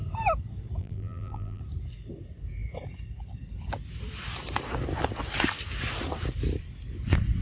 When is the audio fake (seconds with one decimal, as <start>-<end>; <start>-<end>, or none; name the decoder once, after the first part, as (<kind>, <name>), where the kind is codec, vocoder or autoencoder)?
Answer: 0.8-1.6 (vocoder, BigVGAN v2)